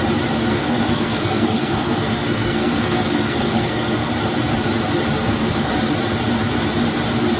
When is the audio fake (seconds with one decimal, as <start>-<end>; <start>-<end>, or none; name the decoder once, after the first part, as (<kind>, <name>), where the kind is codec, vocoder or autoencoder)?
0.5-4.1 (codec, SNAC); 5.2-5.7